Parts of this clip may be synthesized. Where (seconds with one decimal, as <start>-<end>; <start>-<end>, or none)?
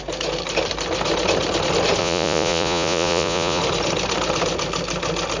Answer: 2.0-3.6